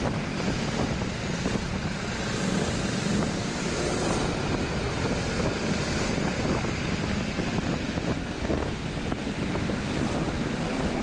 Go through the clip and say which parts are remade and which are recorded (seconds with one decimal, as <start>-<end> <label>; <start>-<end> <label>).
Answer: 0.0-8.2 recorded; 8.2-8.7 remade; 8.7-11.0 recorded